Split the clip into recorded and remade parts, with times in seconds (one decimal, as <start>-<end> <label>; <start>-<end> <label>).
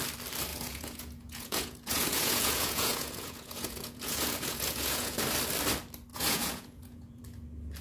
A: 0.0-0.5 recorded; 0.5-5.2 remade; 5.2-6.1 recorded; 6.1-7.2 remade; 7.2-7.8 recorded